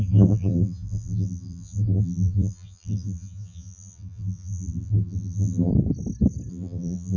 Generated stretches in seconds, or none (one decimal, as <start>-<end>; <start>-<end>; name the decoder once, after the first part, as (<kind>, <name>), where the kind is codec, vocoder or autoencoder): 0.0-5.7 (vocoder, BigVGAN v2); 6.5-7.2